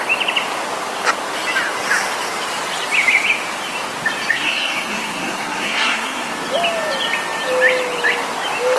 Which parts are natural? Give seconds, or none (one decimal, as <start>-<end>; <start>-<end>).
0.0-4.3; 6.3-8.8